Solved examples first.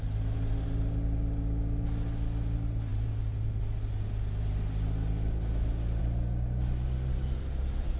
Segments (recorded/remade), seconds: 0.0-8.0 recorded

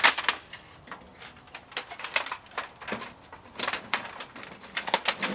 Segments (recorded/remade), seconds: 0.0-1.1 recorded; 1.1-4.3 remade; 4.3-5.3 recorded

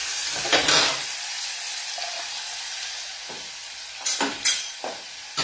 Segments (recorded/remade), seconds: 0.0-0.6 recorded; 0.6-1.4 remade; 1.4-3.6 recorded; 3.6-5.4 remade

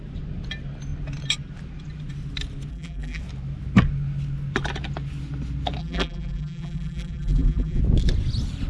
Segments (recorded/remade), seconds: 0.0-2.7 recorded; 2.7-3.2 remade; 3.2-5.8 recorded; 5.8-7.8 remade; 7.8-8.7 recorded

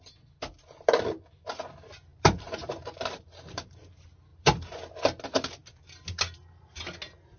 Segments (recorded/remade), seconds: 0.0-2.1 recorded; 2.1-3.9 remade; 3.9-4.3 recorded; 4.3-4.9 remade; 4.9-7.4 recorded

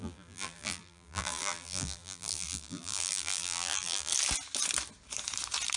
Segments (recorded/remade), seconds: 0.0-4.1 remade; 4.1-5.8 recorded

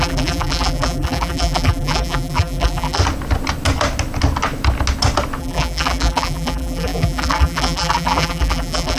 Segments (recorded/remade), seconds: 0.0-3.0 remade; 3.0-5.4 recorded; 5.4-9.0 remade